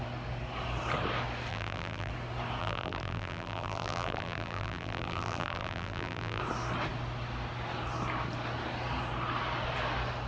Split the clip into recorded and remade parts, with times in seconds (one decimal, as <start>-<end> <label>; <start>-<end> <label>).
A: 0.0-1.5 recorded; 1.5-2.1 remade; 2.1-2.6 recorded; 2.6-6.4 remade; 6.4-10.3 recorded